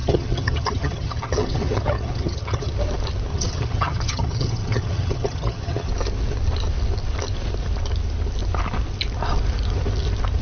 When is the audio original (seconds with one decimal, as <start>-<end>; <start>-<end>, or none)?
2.7-3.3; 5.9-10.4